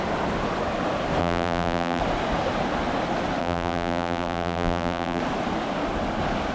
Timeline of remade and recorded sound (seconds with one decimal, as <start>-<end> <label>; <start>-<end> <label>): 0.0-1.2 recorded; 1.2-2.0 remade; 2.0-3.4 recorded; 3.4-5.2 remade; 5.2-6.5 recorded